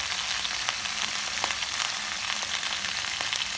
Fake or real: real